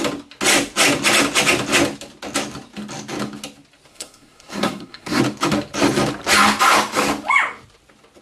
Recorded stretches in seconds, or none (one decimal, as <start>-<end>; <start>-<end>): 0.0-3.9; 5.2-8.2